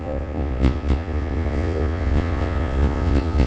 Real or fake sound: fake